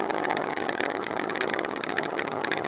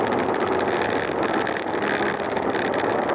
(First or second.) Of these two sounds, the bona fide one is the second